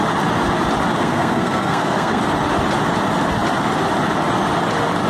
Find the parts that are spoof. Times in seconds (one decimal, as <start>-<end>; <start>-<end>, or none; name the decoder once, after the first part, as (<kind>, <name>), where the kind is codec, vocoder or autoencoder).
1.0-2.2 (codec, SNAC)